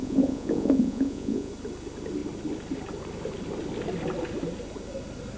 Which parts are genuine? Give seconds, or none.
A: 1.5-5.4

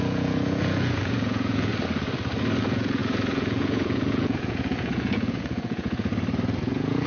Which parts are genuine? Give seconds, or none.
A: 1.7-2.6; 6.1-6.6

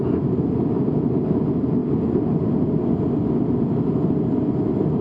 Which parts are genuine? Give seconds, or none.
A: 0.0-5.0

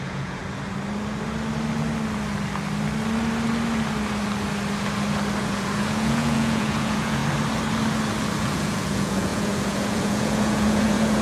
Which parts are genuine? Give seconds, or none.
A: 0.4-5.4; 7.2-8.4

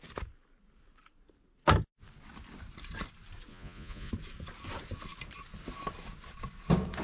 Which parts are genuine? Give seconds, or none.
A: 0.0-3.5; 4.1-7.0

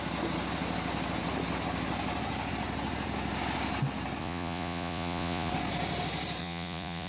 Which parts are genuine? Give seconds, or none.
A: 0.0-4.2; 5.5-6.4

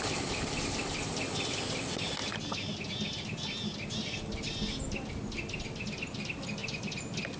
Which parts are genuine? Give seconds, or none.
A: 0.0-7.4

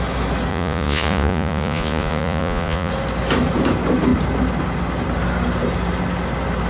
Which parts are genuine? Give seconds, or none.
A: 0.0-0.5; 2.9-6.7